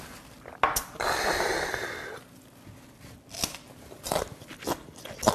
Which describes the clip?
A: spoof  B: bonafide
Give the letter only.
B